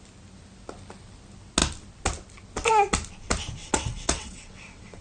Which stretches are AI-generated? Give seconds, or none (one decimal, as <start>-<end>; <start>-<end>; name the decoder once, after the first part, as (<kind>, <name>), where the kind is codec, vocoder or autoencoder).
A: 3.6-5.0 (vocoder, WaveNeXt)